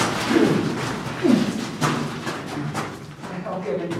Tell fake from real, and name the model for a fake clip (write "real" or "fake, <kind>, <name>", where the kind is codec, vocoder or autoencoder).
real